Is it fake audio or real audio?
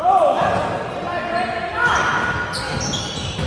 real